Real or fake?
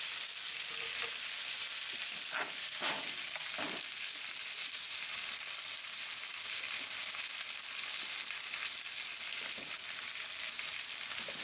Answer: real